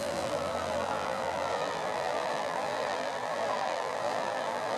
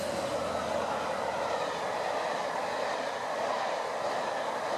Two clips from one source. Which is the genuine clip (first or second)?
second